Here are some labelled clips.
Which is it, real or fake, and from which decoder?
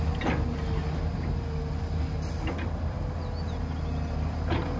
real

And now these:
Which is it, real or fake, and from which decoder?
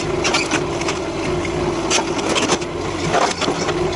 real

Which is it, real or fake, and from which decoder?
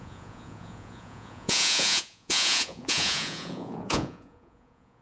fake, vocoder, Vocos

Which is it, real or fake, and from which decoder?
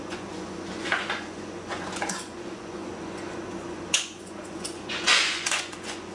fake, vocoder, Vocos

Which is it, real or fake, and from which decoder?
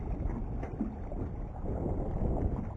real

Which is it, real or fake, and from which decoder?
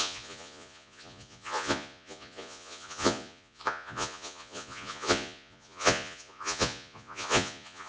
fake, vocoder, Vocos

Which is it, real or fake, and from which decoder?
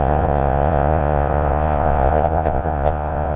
fake, vocoder, Vocos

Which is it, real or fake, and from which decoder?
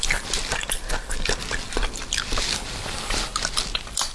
real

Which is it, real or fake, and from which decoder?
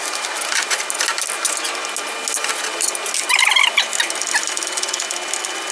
real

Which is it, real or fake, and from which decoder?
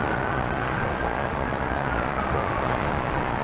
fake, vocoder, Vocos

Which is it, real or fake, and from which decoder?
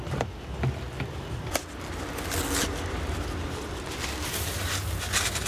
real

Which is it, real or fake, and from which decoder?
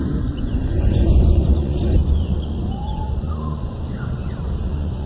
fake, vocoder, Vocos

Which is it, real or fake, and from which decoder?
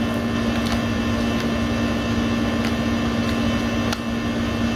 real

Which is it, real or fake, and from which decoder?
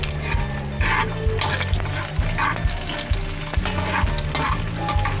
real